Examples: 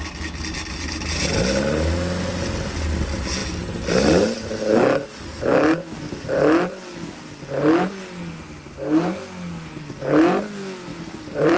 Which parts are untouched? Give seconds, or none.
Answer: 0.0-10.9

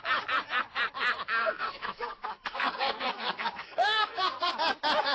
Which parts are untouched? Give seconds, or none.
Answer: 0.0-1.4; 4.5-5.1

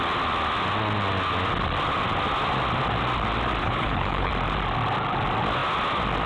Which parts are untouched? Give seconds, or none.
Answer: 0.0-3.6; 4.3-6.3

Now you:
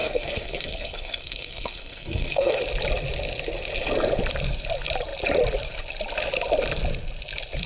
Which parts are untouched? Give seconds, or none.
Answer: 2.6-7.7